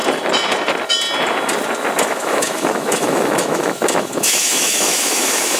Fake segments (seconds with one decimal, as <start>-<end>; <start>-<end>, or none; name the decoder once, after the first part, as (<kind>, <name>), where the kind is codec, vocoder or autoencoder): 2.1-5.6 (autoencoder, DAC-VAE)

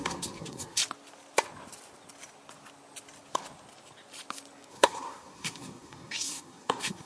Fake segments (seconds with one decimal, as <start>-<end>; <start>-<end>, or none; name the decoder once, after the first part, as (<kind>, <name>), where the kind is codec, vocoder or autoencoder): 0.0-0.8 (codec, SNAC); 4.7-7.1

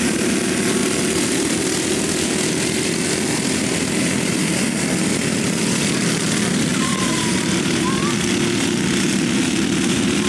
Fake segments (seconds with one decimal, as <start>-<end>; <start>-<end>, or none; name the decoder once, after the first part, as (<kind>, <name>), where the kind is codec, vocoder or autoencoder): 6.7-8.0 (vocoder, BigVGAN v2)

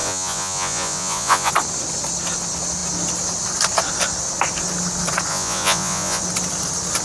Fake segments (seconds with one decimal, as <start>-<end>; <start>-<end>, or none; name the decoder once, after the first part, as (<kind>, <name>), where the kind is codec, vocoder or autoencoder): 0.0-1.5 (vocoder, Vocos); 5.3-6.2

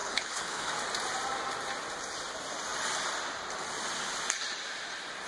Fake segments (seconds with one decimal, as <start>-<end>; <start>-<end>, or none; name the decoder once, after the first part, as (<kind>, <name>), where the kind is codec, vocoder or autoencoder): 0.0-0.7 (codec, HILCodec)

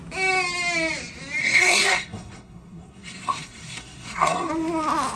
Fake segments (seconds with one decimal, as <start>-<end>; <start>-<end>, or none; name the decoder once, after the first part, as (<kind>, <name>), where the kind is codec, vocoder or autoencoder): 1.4-4.5 (codec, SNAC)